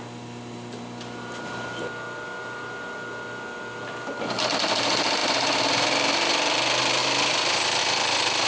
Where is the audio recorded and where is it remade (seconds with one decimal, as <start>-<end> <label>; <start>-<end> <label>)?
0.0-8.5 recorded